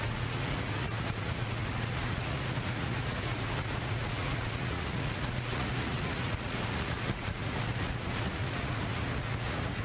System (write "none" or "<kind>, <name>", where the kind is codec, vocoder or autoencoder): vocoder, Vocos